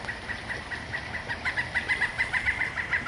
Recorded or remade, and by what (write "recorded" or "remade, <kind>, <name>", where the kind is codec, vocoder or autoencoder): recorded